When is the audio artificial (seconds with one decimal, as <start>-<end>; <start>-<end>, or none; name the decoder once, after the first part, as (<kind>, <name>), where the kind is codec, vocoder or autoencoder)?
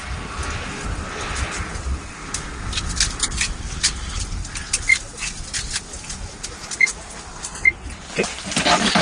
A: none